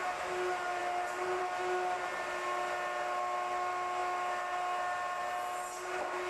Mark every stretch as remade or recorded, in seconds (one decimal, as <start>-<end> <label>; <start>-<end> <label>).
0.0-6.3 recorded